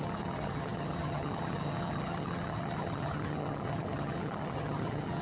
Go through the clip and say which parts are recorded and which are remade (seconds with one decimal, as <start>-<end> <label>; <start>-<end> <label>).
0.0-5.2 remade